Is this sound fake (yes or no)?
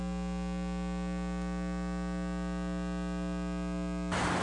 no